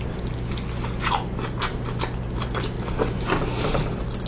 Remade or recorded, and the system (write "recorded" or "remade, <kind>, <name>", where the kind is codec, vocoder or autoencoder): recorded